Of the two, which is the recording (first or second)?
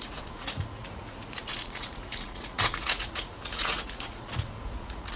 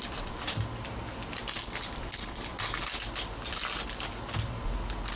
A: second